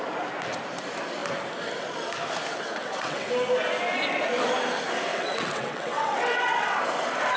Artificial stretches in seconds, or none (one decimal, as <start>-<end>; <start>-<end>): 2.5-3.3; 5.1-6.8